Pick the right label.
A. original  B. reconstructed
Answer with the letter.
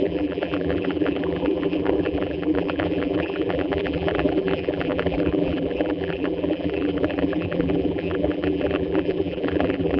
B